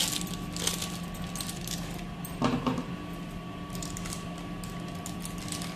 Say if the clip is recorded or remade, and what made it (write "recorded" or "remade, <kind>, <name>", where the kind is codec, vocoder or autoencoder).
recorded